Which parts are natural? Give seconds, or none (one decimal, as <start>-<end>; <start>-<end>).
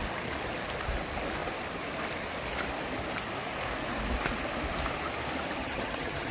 0.0-5.6